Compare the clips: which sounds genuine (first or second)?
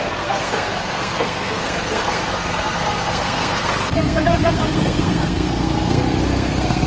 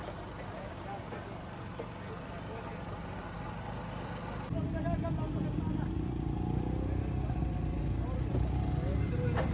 second